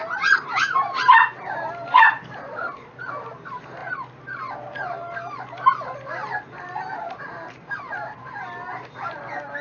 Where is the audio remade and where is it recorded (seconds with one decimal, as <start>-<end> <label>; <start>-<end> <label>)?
0.0-9.6 recorded